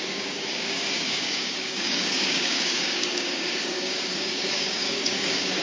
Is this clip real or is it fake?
fake